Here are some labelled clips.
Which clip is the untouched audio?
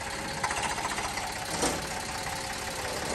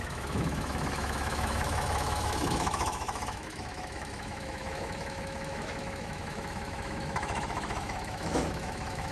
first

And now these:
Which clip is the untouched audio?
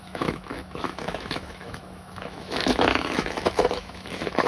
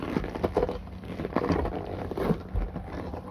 second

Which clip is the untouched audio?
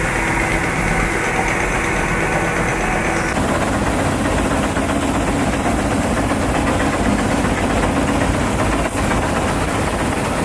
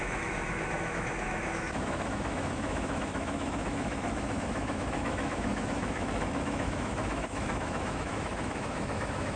first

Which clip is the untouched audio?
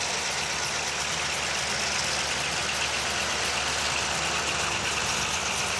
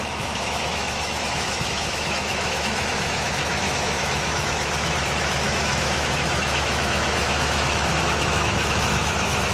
first